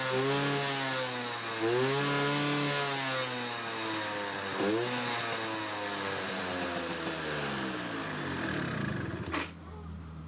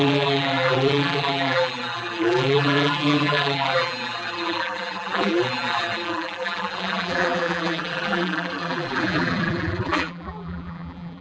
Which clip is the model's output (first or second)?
second